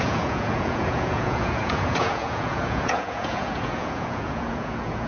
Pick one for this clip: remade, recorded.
remade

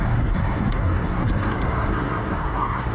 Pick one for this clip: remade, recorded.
remade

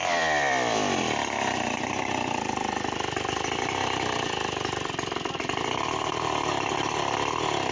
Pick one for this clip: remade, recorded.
remade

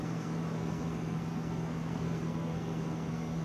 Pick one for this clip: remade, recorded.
remade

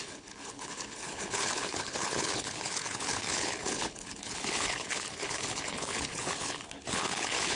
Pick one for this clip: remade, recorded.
remade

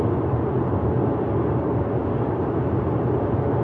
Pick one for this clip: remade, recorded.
recorded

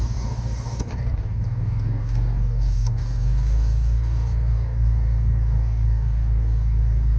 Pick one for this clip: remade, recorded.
remade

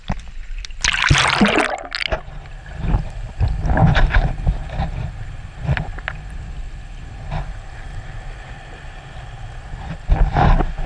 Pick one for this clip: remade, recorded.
recorded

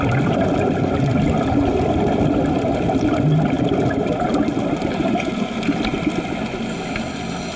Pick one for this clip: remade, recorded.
recorded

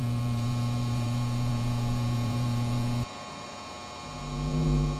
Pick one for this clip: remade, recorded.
remade